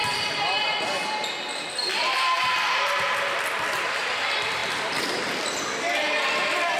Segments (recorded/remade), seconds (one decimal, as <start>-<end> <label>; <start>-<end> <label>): 0.0-2.4 remade; 2.4-4.6 recorded; 4.6-5.2 remade; 5.2-6.8 recorded